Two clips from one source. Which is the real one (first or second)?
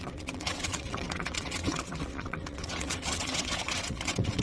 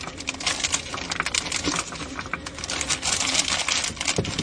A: second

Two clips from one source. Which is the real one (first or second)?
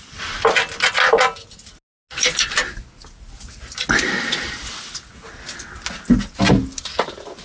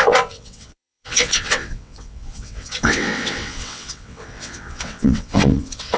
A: first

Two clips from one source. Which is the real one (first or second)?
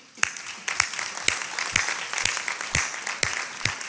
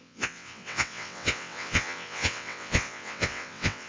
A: first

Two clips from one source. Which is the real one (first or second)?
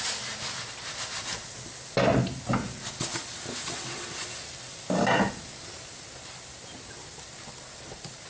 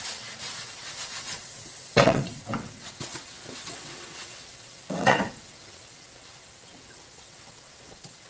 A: first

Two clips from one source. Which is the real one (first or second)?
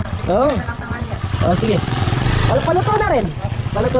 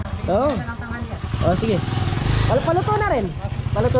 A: second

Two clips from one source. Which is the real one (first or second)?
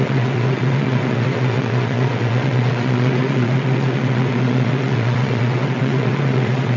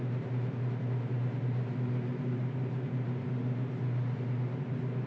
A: second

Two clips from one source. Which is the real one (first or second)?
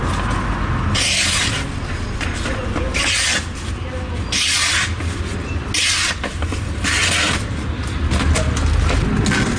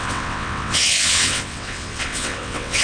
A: first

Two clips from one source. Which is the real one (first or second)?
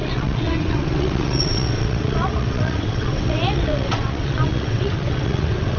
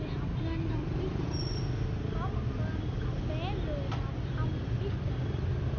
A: second